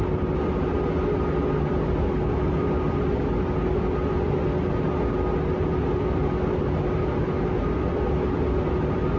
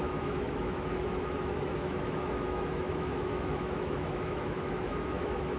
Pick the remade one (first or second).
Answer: second